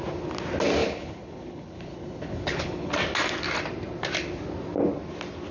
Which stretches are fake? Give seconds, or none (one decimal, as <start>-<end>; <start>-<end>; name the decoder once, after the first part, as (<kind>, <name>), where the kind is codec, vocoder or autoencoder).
0.8-2.9 (codec, HILCodec)